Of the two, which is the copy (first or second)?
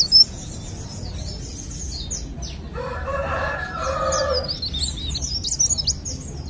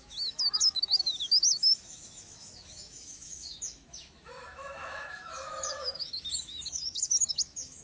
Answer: second